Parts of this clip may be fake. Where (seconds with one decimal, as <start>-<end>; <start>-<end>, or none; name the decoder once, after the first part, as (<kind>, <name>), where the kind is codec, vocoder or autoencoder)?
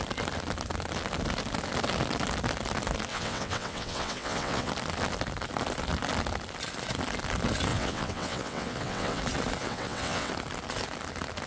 3.1-4.7 (vocoder, WaveNeXt); 7.7-9.2; 9.6-10.3